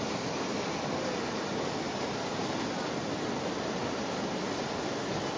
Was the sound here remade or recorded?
recorded